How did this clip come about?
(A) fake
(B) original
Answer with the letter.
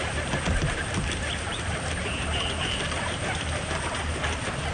B